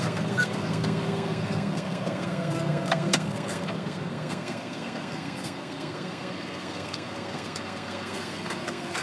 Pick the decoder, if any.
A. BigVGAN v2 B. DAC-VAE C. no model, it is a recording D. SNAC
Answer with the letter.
D